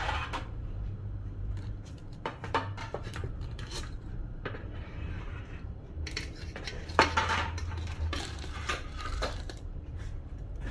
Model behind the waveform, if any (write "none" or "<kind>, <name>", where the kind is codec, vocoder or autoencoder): vocoder, BigVGAN v2